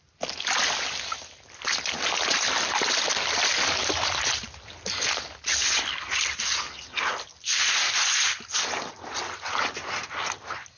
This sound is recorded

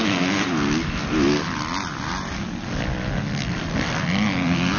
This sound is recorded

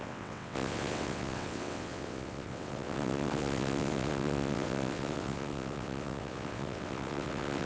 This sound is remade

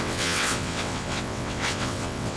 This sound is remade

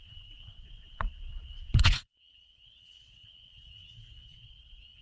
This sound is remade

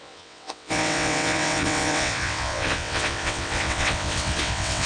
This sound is remade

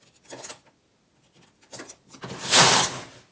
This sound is recorded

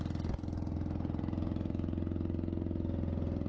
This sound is recorded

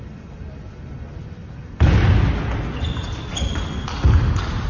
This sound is recorded